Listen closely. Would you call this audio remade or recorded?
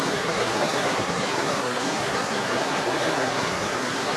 remade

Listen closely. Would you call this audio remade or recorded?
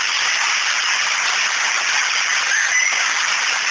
recorded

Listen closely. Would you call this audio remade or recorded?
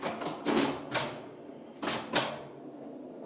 recorded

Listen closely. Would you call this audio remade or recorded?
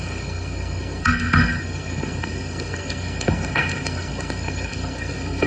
remade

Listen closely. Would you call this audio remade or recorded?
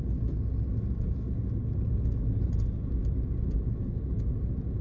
recorded